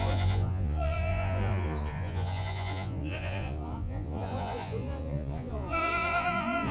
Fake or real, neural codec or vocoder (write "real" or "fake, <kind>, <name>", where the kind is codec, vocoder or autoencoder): fake, vocoder, Vocos